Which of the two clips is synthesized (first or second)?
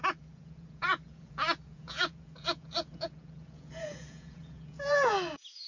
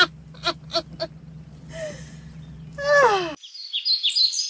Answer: first